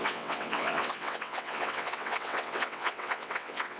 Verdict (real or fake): fake